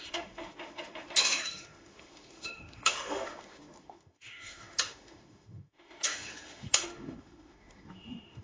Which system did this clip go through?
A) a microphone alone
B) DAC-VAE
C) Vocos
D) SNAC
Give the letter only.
B